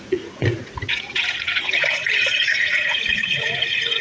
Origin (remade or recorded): remade